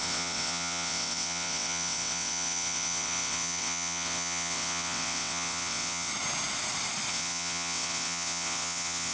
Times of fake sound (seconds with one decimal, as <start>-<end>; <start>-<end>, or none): 0.0-6.1; 7.1-9.1